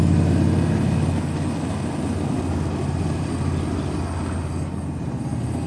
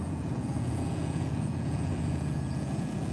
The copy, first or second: second